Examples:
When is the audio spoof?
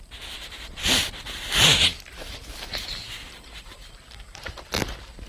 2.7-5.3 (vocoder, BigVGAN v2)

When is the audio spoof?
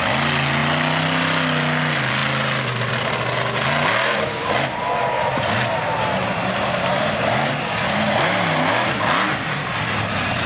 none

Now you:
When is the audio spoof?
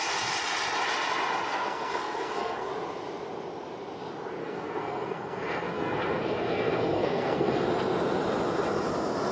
1.5-2.7 (codec, SNAC); 4.4-7.7